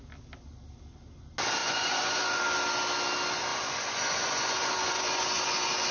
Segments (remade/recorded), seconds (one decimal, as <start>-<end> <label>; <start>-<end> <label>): 0.0-1.6 recorded; 1.6-2.4 remade; 2.4-3.5 recorded; 3.5-5.9 remade